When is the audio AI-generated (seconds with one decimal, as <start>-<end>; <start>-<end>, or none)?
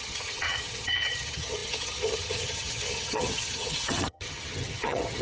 0.0-5.2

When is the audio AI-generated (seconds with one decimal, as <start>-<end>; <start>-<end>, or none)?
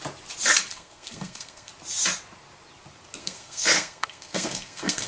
0.7-1.7; 3.2-5.1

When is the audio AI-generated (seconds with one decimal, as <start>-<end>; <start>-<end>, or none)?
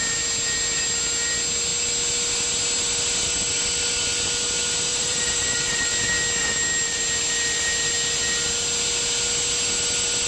4.9-5.9; 6.4-7.0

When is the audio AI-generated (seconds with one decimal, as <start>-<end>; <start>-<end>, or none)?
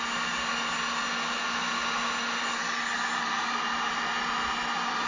none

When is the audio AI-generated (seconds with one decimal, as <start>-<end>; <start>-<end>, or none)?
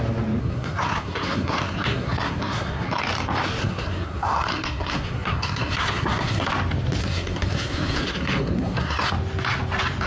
0.4-3.0; 3.6-6.5; 7.0-9.1